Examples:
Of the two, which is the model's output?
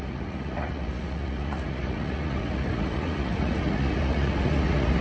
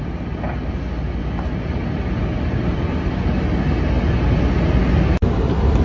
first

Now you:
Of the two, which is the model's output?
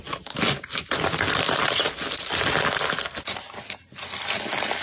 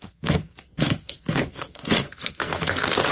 second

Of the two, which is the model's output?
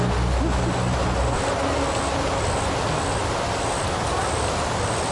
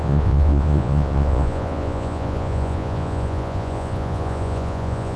second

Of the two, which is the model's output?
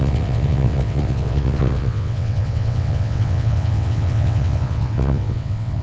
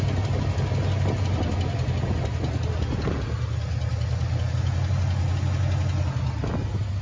first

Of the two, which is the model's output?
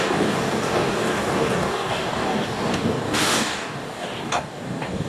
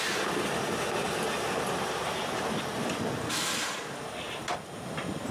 first